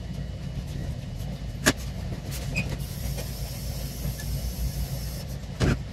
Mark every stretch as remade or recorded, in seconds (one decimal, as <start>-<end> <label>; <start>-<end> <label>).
0.0-5.9 recorded